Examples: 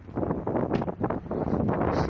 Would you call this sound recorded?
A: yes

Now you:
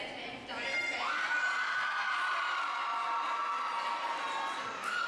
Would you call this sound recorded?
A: yes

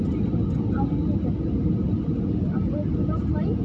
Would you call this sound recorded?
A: yes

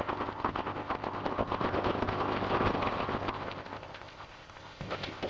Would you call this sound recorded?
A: no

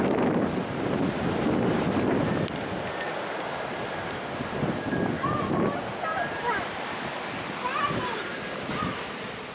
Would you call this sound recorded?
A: yes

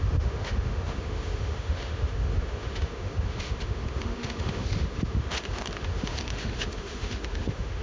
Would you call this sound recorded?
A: no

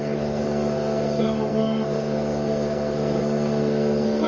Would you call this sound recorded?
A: no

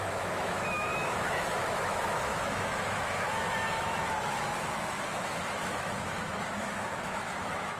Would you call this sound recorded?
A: no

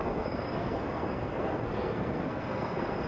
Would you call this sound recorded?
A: no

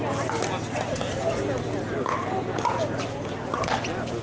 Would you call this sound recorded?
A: yes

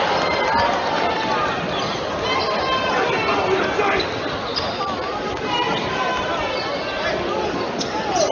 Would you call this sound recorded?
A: yes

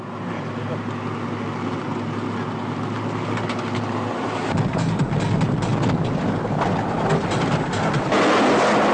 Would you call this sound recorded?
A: yes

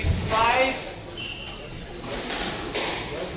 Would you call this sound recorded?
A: yes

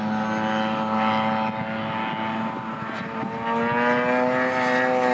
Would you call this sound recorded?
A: yes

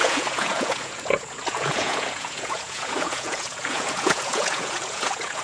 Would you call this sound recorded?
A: no